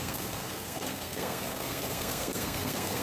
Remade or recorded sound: remade